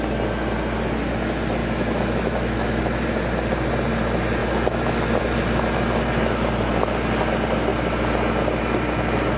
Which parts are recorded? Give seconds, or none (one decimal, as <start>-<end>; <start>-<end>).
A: 0.0-1.6; 2.8-9.4